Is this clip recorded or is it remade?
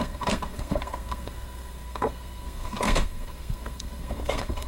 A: remade